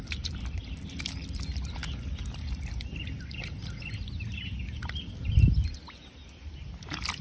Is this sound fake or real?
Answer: real